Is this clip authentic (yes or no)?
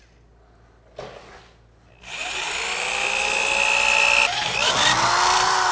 yes